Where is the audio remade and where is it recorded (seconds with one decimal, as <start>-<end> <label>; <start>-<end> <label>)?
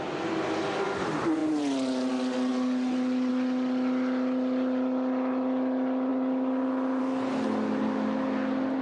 0.0-8.8 recorded